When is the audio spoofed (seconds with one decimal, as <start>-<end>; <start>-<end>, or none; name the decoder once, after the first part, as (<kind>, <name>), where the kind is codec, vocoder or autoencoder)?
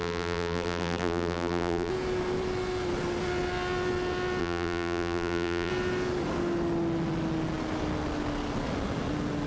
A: 0.0-1.9 (vocoder, BigVGAN v2); 4.4-5.7